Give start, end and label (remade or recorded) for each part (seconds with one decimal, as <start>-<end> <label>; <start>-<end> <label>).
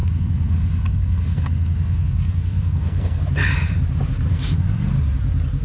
0.0-3.2 remade; 3.2-4.3 recorded; 4.3-4.9 remade; 4.9-5.6 recorded